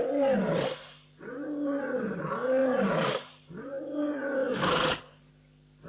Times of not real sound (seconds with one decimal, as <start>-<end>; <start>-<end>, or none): 2.6-3.3; 4.4-5.3